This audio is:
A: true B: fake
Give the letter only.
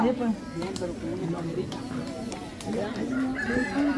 A